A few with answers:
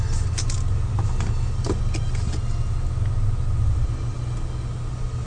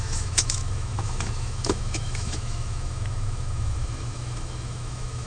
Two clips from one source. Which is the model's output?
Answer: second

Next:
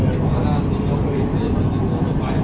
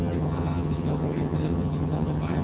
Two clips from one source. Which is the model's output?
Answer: second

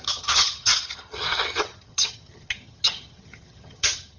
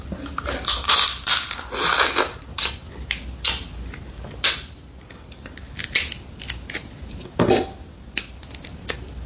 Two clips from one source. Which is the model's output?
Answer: first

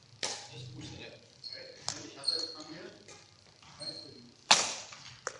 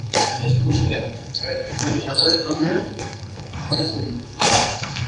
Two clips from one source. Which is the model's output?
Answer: second